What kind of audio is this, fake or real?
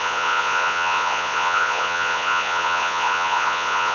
fake